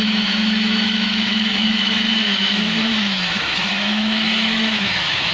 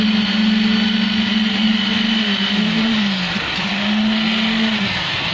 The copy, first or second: first